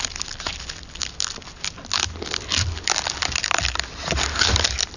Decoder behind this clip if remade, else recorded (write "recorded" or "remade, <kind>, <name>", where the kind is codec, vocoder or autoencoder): recorded